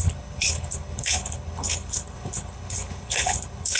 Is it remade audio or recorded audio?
remade